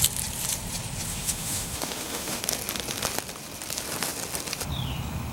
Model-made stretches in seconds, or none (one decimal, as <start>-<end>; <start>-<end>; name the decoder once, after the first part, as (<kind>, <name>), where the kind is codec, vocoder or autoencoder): 1.1-2.4 (autoencoder, DAC-VAE)